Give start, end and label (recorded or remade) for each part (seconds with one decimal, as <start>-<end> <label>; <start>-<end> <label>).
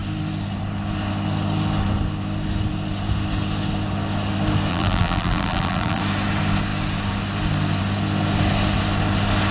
0.0-4.7 recorded; 4.7-6.0 remade; 6.0-9.5 recorded